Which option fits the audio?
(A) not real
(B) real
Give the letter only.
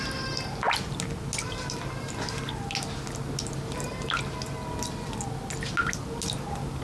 B